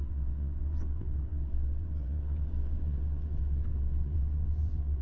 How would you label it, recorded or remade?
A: remade